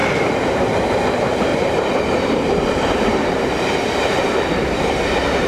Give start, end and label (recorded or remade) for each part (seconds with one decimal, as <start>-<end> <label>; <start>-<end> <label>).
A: 0.0-0.6 remade; 0.6-1.5 recorded; 1.5-4.8 remade; 4.8-5.5 recorded